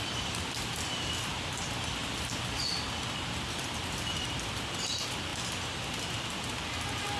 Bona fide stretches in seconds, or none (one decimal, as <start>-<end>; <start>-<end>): 0.0-7.2